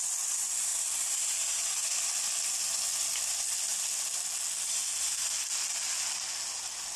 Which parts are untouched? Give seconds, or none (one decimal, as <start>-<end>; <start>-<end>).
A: 0.0-7.0